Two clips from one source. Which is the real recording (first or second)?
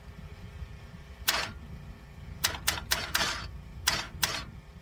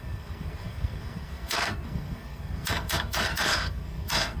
first